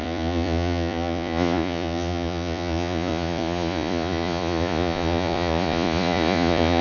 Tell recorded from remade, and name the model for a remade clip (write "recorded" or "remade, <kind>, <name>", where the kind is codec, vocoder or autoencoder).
remade, vocoder, Vocos